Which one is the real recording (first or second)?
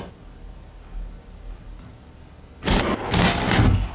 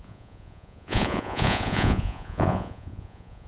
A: first